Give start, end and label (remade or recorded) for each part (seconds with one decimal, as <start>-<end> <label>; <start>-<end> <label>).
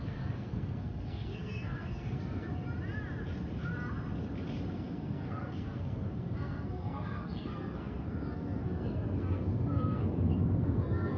0.0-2.5 remade; 2.5-4.7 recorded; 4.7-11.2 remade